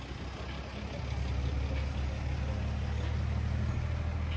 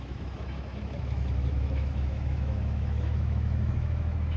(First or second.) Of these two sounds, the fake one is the second